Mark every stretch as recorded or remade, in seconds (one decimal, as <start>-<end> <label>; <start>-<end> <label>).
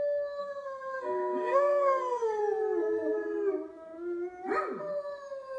0.0-0.4 recorded; 0.4-2.4 remade; 2.4-5.6 recorded